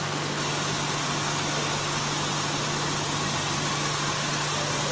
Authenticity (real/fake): real